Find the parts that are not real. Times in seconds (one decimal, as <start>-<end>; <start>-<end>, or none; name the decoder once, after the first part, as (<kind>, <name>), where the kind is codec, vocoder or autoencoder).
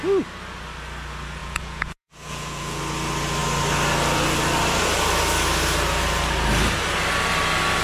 1.4-2.8 (vocoder, Vocos)